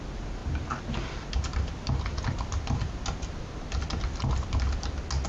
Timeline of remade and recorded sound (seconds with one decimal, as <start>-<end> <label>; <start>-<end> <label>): 0.0-5.3 recorded